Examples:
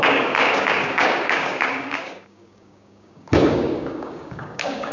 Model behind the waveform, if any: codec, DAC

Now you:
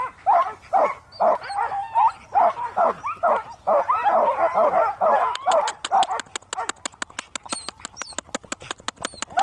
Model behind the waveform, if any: none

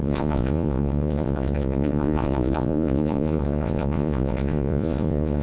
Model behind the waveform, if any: vocoder, Vocos